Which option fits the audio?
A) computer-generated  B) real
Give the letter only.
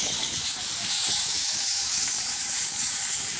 A